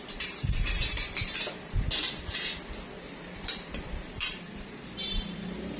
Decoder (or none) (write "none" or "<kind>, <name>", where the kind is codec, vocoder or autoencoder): vocoder, BigVGAN v2